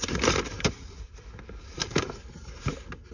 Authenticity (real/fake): real